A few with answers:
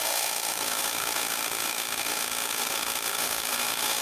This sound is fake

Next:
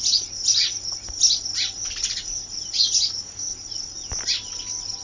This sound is real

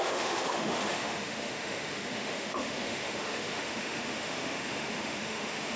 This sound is fake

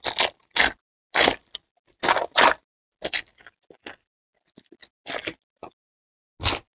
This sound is real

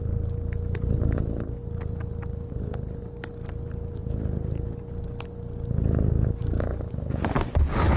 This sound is real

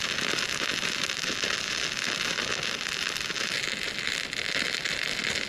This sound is real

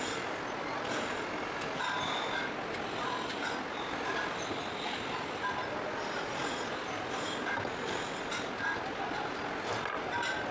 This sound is real